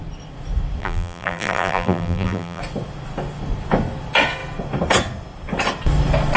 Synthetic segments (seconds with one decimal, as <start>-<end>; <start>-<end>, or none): 0.8-2.6